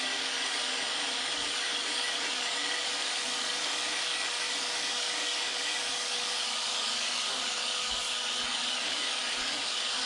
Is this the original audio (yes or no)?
no